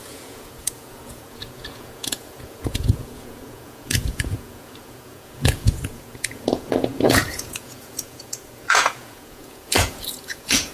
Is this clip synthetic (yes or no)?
yes